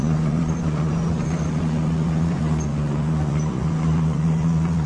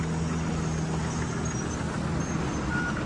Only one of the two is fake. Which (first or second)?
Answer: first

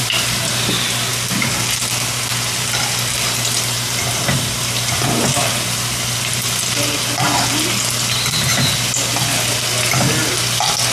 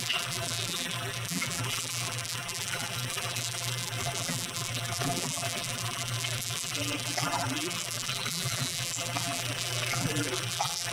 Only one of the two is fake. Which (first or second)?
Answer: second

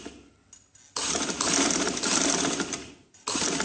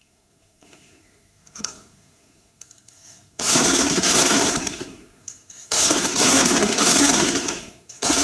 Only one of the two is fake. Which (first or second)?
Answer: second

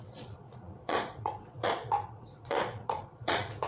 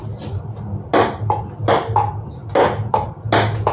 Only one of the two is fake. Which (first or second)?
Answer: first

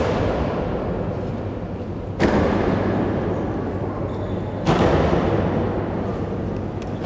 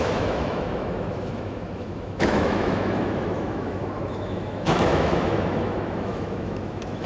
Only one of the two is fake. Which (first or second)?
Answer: second